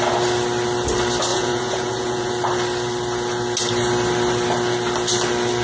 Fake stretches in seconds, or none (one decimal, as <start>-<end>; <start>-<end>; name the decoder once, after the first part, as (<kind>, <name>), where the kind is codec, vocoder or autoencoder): 1.3-2.3 (vocoder, Vocos)